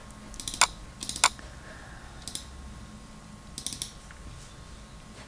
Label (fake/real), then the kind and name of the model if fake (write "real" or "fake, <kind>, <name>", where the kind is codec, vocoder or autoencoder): real